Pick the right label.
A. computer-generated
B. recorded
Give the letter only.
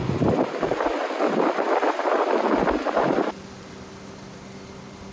B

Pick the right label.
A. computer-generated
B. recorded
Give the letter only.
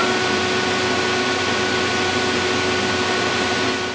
B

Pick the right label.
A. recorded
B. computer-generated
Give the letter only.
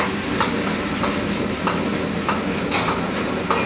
A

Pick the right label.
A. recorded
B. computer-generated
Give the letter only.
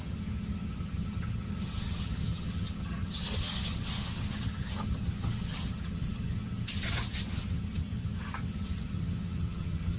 B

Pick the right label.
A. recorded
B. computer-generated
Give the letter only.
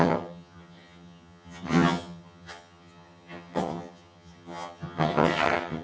B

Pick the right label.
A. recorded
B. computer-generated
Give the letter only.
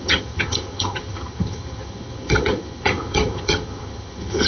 B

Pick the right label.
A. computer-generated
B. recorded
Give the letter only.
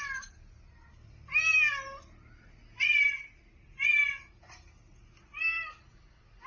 B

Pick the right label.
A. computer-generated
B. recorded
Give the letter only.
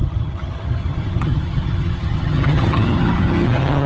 A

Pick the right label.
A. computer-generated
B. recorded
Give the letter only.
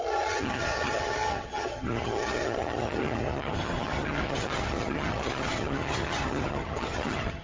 A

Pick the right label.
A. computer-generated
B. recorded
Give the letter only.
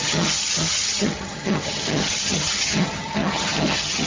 A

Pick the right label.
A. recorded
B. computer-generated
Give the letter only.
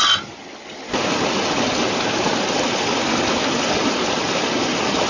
A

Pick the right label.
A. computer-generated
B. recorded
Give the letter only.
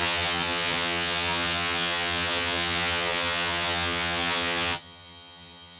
A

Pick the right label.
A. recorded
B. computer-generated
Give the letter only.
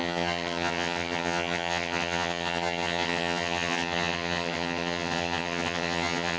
B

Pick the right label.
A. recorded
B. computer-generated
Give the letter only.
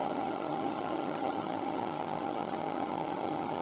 B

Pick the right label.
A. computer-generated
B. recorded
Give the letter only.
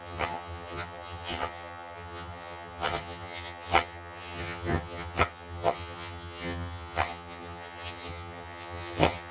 A